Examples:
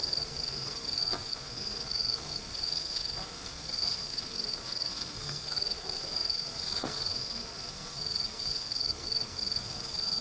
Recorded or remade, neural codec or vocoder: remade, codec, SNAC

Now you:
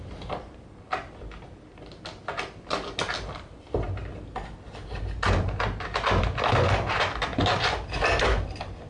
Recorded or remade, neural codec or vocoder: recorded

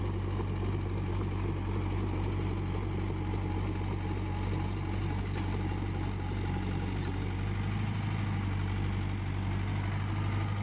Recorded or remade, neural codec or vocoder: recorded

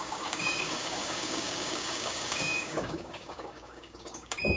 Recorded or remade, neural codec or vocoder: remade, codec, DAC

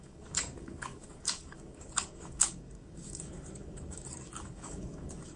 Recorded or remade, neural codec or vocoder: remade, codec, DAC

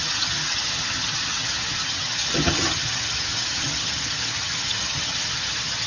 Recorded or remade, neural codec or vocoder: remade, vocoder, HiFi-GAN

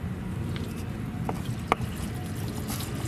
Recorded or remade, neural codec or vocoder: recorded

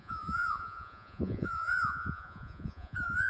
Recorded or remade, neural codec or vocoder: remade, vocoder, Vocos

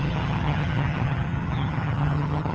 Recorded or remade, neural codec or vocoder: remade, vocoder, HiFi-GAN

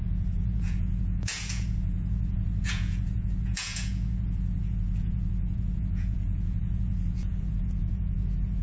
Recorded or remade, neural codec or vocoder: remade, vocoder, Vocos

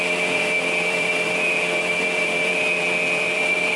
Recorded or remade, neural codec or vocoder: remade, vocoder, BigVGAN v2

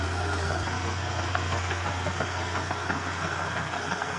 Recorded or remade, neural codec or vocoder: remade, codec, SNAC